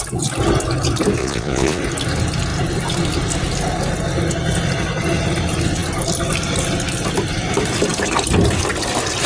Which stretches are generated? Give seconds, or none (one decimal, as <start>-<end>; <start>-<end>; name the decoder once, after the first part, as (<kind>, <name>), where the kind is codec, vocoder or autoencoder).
1.2-1.8 (vocoder, Vocos)